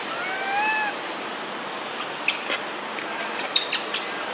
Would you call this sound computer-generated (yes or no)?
no